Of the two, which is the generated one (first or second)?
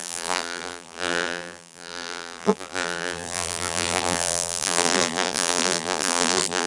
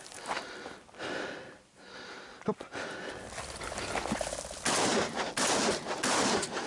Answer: first